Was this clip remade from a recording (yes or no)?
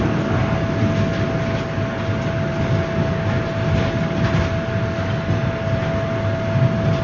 no